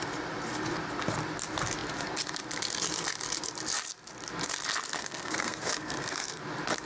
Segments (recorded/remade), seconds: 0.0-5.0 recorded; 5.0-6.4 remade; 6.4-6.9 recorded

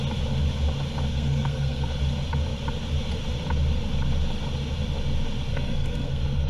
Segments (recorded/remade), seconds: 0.0-1.1 recorded; 1.1-2.0 remade; 2.0-5.5 recorded; 5.5-6.5 remade